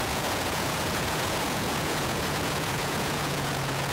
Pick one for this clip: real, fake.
fake